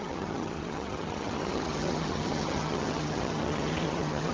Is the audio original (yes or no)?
no